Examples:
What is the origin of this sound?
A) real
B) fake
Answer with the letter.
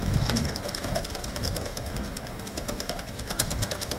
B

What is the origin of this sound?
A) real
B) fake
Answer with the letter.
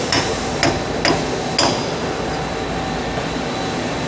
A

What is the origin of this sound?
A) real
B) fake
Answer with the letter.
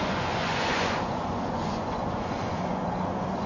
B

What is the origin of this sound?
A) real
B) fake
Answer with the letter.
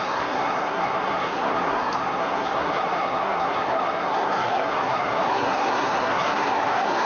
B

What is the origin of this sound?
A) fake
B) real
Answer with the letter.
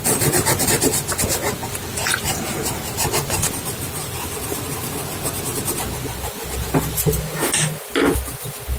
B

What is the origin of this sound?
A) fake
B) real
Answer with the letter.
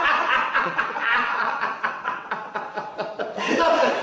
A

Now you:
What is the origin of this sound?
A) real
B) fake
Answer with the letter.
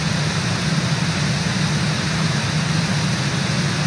A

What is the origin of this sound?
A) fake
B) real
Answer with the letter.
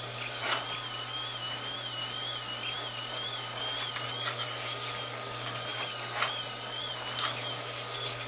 B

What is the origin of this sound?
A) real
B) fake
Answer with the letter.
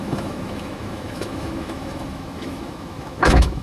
B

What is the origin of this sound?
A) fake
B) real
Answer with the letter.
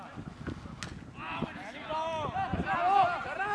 B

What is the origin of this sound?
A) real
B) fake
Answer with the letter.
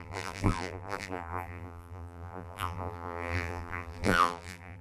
B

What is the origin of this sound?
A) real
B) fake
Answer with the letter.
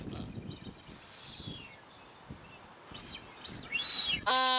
A